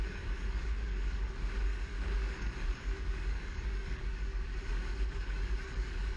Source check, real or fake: fake